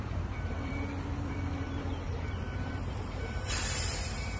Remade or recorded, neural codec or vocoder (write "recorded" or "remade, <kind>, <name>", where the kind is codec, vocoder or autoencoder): remade, vocoder, BigVGAN v2